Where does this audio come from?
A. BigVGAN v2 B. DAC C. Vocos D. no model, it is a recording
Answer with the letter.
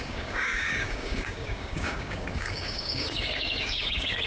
B